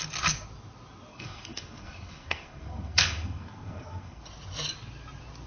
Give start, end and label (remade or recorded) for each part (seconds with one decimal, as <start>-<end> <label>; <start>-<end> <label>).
0.0-1.1 recorded; 1.1-4.2 remade; 4.2-5.5 recorded